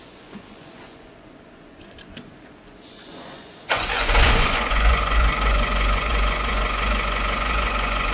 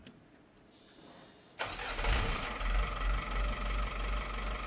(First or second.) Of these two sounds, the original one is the second